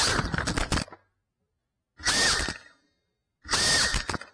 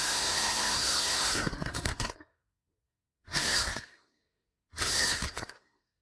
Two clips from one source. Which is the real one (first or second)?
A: first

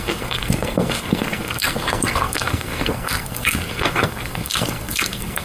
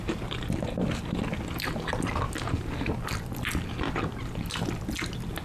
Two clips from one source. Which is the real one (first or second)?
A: second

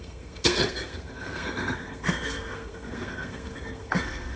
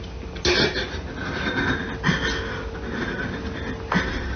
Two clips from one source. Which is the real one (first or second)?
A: second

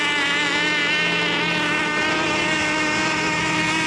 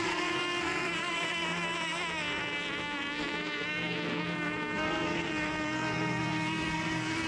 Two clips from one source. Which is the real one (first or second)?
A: first